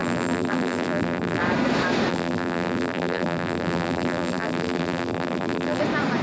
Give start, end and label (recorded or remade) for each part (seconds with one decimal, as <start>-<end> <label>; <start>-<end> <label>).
0.0-1.4 remade; 1.4-2.1 recorded; 2.1-5.8 remade; 5.8-6.2 recorded